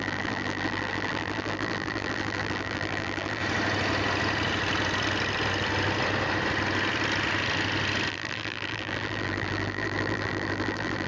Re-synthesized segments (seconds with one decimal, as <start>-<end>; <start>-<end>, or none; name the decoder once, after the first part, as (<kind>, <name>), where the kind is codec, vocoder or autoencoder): 0.0-3.4 (vocoder, BigVGAN v2); 8.1-11.1